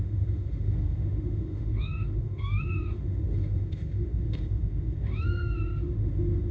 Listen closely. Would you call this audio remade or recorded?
remade